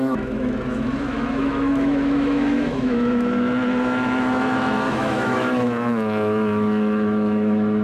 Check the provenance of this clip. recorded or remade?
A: remade